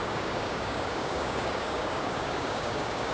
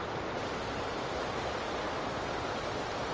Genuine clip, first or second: second